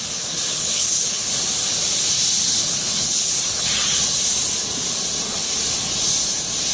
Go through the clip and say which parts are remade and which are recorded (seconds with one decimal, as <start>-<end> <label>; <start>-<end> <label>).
0.0-0.5 recorded; 0.5-1.3 remade; 1.3-2.5 recorded; 2.5-3.7 remade; 3.7-6.7 recorded